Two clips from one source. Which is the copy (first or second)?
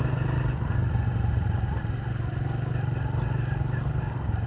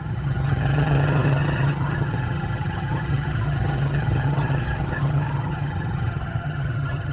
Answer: second